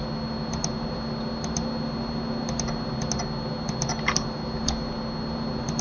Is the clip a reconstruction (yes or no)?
no